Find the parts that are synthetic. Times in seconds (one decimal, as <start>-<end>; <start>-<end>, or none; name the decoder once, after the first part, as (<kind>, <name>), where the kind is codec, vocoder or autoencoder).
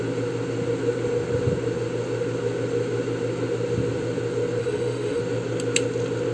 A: 4.6-5.2 (autoencoder, DAC-VAE)